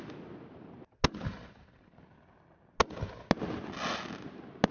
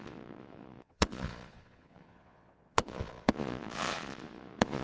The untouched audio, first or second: first